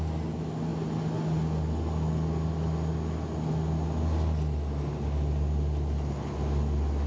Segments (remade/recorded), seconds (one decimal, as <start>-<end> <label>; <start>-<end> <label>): 0.0-7.1 recorded